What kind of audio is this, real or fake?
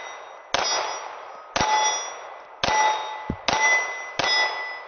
real